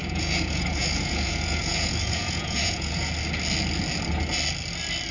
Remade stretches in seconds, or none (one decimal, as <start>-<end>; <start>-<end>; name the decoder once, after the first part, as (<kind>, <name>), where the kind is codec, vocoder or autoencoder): 0.0-3.1 (vocoder, Vocos)